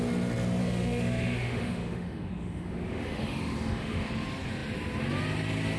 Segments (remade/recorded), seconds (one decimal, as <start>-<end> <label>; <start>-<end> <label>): 0.0-0.6 recorded; 0.6-4.1 remade; 4.1-5.8 recorded